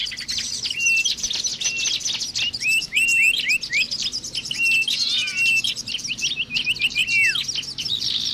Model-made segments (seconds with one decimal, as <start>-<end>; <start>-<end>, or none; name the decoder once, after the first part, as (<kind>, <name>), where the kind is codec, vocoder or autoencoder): 0.0-1.5 (vocoder, BigVGAN v2); 2.4-3.2; 5.6-7.0; 7.8-8.3